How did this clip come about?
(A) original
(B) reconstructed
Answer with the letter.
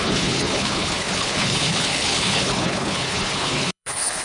B